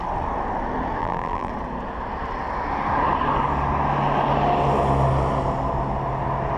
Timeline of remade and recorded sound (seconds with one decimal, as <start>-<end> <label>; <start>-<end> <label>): 0.0-1.0 recorded; 1.0-1.5 remade; 1.5-6.6 recorded